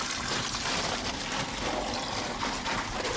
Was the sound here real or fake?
real